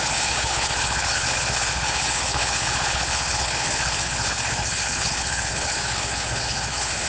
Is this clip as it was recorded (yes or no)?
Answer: no